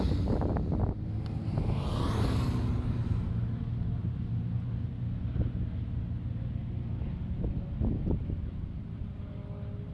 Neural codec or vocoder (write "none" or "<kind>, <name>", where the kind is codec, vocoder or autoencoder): none